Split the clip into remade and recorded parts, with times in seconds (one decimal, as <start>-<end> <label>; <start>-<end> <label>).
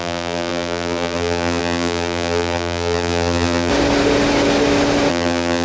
0.0-3.7 remade; 3.7-5.1 recorded; 5.1-5.6 remade